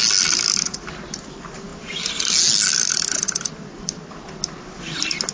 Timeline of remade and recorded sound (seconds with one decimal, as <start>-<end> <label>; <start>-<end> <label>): 0.0-5.3 recorded